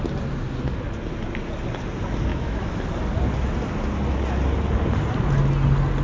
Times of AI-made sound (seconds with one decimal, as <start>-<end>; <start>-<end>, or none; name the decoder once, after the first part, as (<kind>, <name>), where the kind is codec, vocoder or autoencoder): 2.3-2.8 (autoencoder, DAC-VAE)